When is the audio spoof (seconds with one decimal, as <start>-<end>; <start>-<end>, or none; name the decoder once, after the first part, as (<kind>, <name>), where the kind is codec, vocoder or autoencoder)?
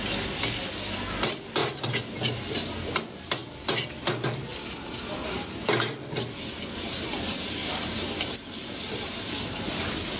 7.6-10.2 (vocoder, BigVGAN v2)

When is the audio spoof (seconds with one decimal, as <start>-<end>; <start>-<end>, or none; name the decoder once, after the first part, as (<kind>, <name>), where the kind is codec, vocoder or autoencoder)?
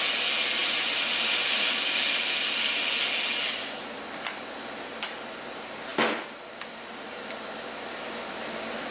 0.6-2.0 (vocoder, BigVGAN v2); 5.9-7.3